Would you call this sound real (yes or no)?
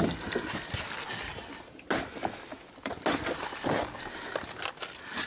yes